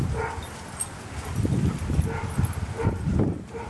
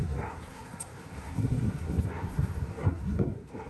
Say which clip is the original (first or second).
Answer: first